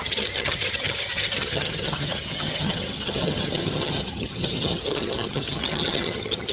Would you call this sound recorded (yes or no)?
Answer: no